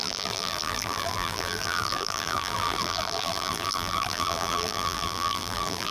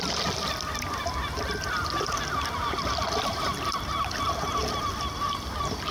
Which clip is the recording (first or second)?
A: second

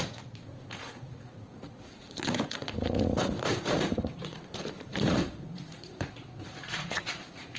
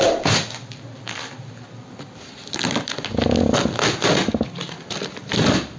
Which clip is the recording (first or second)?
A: second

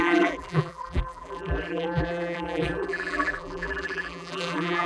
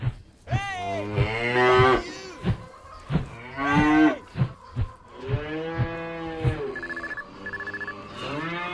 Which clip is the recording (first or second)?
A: second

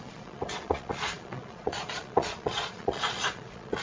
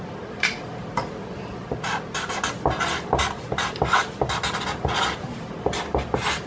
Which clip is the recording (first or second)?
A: second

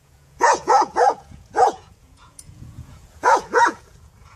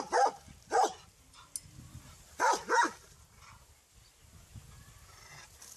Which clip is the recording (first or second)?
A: second